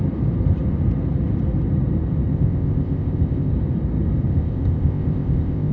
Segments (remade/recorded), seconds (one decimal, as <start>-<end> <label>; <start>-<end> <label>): 0.0-2.3 recorded; 2.3-3.5 remade; 3.5-4.3 recorded; 4.3-5.7 remade